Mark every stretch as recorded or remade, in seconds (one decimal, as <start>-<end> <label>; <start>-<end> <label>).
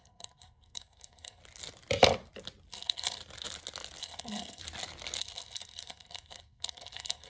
0.0-1.4 remade; 1.4-2.7 recorded; 2.7-3.2 remade; 3.2-4.0 recorded; 4.0-4.6 remade; 4.6-5.2 recorded; 5.2-7.3 remade